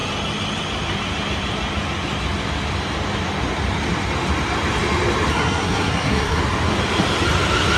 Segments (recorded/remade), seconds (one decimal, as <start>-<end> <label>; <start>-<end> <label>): 0.0-5.3 recorded; 5.3-6.4 remade; 6.4-7.8 recorded